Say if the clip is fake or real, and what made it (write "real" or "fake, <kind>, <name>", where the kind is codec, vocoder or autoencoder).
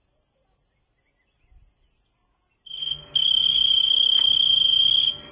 real